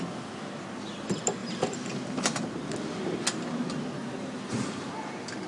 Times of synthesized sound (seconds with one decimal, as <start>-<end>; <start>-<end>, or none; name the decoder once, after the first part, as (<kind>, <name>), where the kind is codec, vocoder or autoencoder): 1.4-2.4 (vocoder, BigVGAN v2); 4.0-4.9